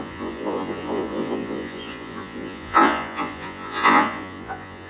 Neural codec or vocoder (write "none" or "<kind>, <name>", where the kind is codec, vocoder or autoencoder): vocoder, Vocos